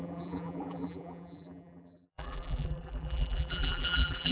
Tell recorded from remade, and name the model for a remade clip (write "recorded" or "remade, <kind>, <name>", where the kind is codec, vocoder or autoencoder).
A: remade, vocoder, BigVGAN v2